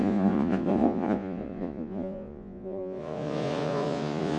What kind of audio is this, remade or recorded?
remade